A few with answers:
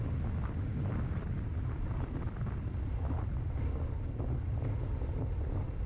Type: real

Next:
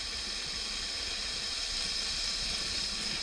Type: real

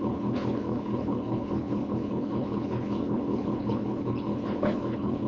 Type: fake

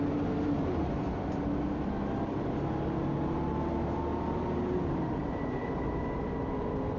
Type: real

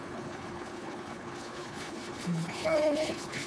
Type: fake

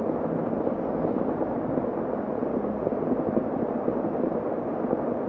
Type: real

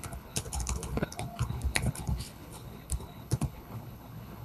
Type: fake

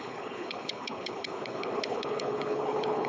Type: fake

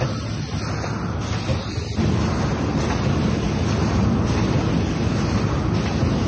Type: real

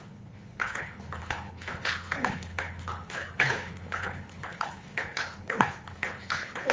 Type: fake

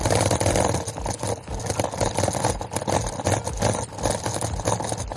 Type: real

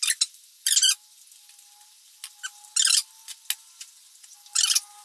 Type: real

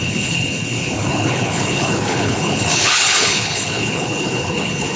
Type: fake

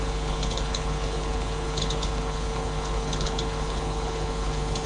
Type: fake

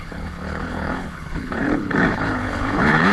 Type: fake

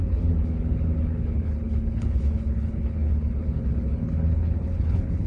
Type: fake